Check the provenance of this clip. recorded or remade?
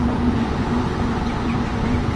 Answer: remade